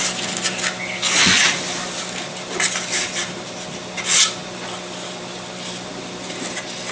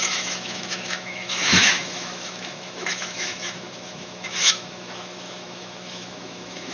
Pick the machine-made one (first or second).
second